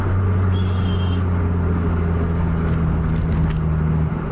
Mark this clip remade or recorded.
recorded